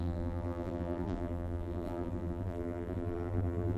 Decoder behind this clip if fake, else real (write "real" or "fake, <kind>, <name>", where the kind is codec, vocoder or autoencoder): fake, vocoder, BigVGAN v2